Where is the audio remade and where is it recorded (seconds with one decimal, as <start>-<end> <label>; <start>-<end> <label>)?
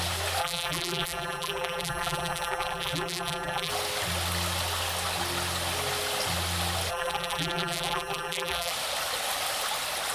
0.0-0.4 recorded; 0.4-3.7 remade; 3.7-6.9 recorded; 6.9-8.7 remade; 8.7-10.1 recorded